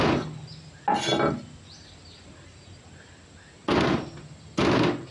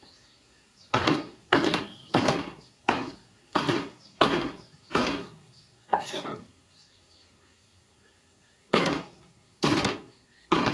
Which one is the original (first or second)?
first